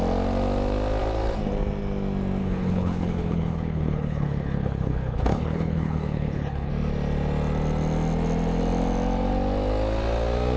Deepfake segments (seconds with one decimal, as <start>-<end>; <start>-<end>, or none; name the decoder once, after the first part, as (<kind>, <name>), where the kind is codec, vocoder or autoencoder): 2.4-6.7 (codec, HILCodec)